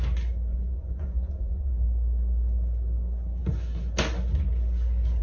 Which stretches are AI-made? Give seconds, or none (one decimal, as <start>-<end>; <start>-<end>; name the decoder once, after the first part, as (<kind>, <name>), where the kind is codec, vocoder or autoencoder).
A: 0.5-1.7 (vocoder, Vocos)